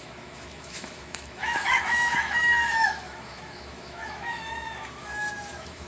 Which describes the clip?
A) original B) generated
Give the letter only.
B